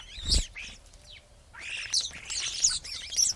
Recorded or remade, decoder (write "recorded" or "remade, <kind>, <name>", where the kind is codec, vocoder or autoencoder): recorded